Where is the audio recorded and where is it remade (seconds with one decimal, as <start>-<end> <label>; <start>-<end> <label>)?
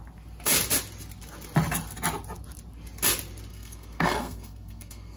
0.0-3.5 recorded; 3.5-5.2 remade